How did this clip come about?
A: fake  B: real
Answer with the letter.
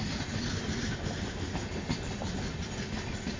B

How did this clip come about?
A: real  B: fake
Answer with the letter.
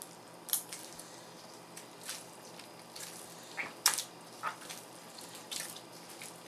A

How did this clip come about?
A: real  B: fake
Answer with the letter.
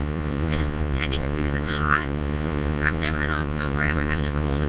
B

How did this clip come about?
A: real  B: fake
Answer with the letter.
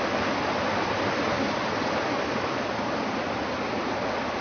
A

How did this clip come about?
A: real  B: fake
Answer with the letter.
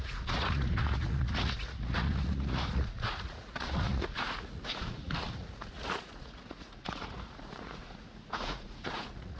B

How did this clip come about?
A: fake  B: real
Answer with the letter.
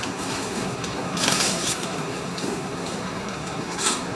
A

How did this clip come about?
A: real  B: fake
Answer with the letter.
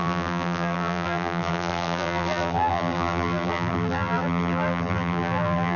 B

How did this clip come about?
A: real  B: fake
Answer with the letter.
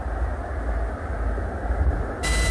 A